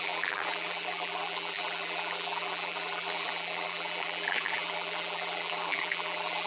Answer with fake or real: fake